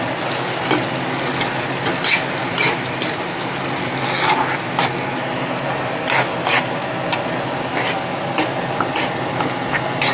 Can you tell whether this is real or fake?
real